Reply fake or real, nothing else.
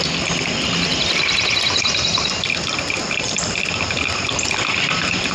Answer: fake